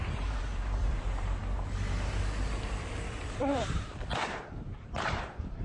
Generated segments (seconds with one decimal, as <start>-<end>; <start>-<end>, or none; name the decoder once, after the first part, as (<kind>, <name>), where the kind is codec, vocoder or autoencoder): 0.0-1.4 (vocoder, BigVGAN v2); 3.2-5.6